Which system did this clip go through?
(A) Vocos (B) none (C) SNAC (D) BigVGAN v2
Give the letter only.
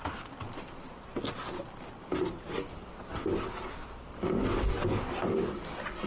B